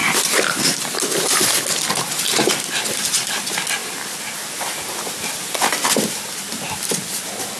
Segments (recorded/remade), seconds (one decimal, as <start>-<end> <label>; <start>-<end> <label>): 0.0-7.6 recorded